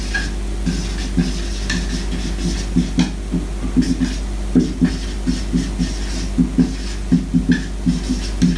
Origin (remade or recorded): recorded